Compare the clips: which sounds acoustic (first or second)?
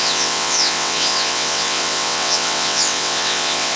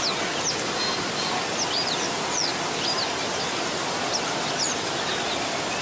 second